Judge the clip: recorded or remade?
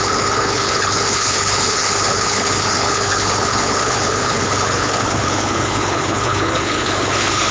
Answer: remade